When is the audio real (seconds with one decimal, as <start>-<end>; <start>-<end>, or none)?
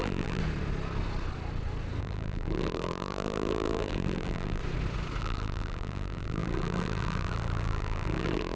0.4-2.0; 4.6-5.2